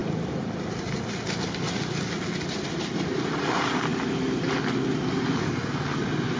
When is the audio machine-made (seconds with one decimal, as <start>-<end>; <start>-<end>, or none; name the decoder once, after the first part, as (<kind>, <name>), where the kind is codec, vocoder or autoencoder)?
none